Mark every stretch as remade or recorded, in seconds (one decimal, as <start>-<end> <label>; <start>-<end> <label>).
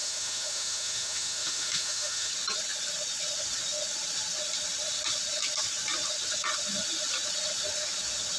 0.0-2.3 remade; 2.3-8.4 recorded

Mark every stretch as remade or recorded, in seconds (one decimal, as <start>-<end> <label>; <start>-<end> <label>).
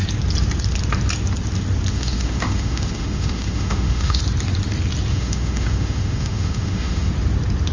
0.0-1.9 recorded; 1.9-4.2 remade; 4.2-5.1 recorded; 5.1-7.1 remade; 7.1-7.7 recorded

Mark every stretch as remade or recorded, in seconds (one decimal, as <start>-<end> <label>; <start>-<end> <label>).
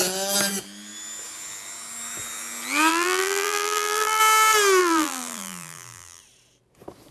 0.0-2.9 recorded; 2.9-4.2 remade; 4.2-4.8 recorded; 4.8-6.2 remade; 6.2-7.1 recorded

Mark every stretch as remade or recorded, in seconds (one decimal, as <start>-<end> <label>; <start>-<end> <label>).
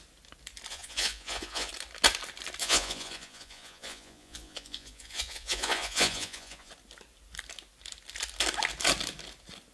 0.0-0.7 recorded; 0.7-1.7 remade; 1.7-2.6 recorded; 2.6-6.7 remade; 6.7-9.7 recorded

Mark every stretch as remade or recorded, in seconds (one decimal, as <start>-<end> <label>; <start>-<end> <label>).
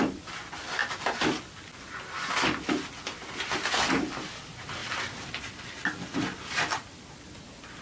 0.0-0.8 recorded; 0.8-1.4 remade; 1.4-4.8 recorded; 4.8-5.8 remade; 5.8-7.8 recorded